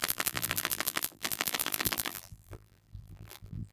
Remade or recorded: remade